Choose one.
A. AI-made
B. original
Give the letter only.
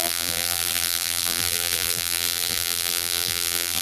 A